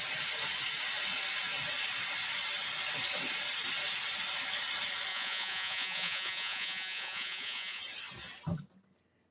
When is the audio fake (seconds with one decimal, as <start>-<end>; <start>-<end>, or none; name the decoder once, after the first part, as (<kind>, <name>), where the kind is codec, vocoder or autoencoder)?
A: 5.1-7.8 (vocoder, Vocos)